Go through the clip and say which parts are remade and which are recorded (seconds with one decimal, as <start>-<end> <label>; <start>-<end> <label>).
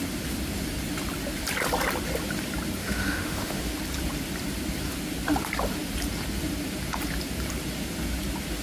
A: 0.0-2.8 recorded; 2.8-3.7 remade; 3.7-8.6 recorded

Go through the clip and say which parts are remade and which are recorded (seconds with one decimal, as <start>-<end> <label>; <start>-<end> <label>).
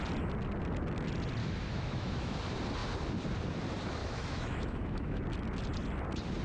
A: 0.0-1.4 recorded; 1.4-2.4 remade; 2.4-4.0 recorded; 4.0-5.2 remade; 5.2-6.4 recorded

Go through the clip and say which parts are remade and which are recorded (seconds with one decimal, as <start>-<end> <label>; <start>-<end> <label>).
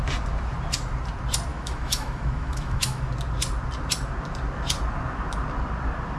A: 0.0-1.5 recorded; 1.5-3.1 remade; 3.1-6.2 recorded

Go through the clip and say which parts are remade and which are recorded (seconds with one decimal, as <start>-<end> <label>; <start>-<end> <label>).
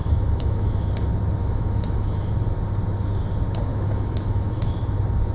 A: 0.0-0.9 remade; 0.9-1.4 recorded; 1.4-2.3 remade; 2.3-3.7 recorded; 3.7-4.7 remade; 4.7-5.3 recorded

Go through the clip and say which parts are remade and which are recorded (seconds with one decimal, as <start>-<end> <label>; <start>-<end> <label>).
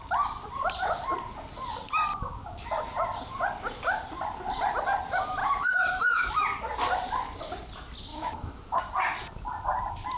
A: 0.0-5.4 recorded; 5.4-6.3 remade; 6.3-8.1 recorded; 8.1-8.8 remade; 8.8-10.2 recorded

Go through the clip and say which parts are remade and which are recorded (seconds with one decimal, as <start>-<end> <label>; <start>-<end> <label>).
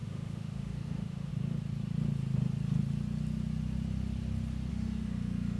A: 0.0-1.3 remade; 1.3-4.7 recorded; 4.7-5.6 remade